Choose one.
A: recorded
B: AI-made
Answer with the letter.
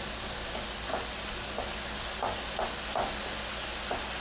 A